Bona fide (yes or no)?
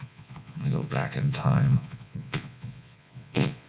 no